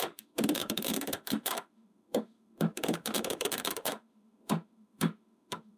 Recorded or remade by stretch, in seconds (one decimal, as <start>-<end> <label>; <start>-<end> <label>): 0.0-5.8 remade